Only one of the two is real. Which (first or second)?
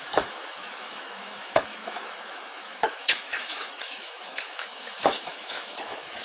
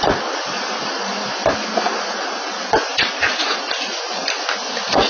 second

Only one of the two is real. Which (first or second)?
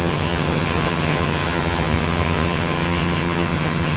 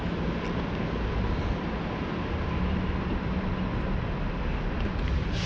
second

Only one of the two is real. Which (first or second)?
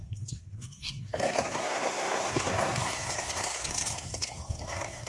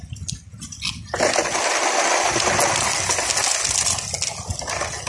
second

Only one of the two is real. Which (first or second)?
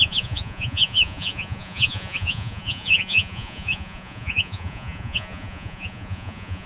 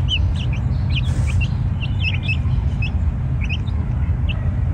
second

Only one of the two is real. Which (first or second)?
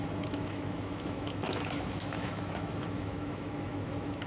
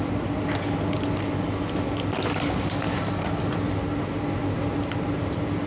second